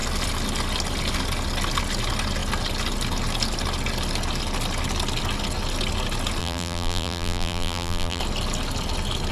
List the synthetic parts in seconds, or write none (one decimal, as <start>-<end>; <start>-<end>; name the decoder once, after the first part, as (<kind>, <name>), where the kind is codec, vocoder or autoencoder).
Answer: 6.4-8.2 (vocoder, BigVGAN v2)